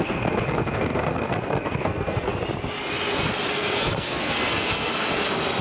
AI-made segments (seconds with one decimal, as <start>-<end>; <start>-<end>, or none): 0.0-2.3; 3.5-4.9